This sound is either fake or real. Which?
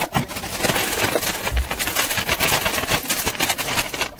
real